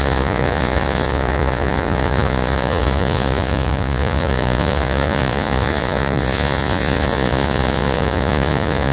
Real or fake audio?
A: fake